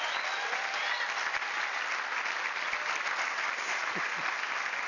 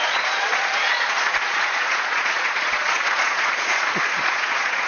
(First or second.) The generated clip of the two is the second